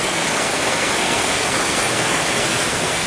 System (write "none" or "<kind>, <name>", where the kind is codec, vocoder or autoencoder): codec, SNAC